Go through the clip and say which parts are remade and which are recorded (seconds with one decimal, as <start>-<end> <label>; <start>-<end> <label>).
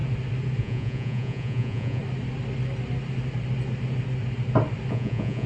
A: 0.0-0.6 recorded; 0.6-2.0 remade; 2.0-4.9 recorded; 4.9-5.5 remade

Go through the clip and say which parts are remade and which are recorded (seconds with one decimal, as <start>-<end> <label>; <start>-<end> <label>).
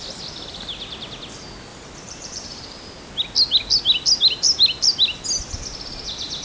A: 0.0-1.7 recorded; 1.7-3.1 remade; 3.1-6.4 recorded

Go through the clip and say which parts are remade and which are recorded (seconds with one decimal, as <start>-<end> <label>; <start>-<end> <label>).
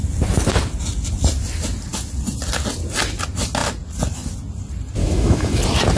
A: 0.0-5.0 recorded; 5.0-5.6 remade; 5.6-6.0 recorded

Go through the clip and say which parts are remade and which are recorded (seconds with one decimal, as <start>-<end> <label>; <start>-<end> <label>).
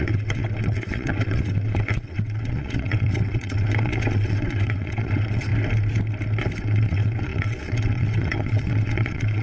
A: 0.0-5.5 remade; 5.5-6.6 recorded; 6.6-9.4 remade